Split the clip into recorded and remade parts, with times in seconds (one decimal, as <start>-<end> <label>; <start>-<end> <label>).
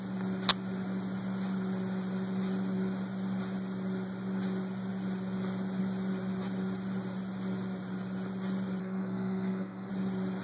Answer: 0.0-8.8 recorded; 8.8-9.9 remade; 9.9-10.4 recorded